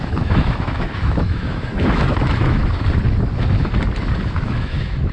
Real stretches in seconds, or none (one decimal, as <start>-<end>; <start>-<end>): 2.6-4.2